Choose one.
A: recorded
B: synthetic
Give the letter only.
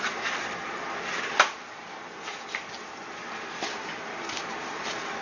B